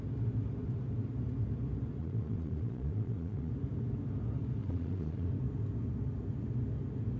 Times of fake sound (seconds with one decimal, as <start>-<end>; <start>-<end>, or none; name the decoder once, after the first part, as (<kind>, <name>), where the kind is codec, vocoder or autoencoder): 2.0-3.5 (vocoder, Vocos); 4.6-5.3